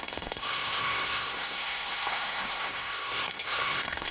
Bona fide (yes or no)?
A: no